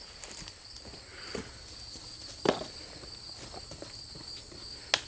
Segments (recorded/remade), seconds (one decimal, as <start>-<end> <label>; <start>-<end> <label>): 0.0-5.1 recorded